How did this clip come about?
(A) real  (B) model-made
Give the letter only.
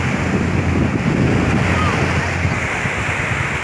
A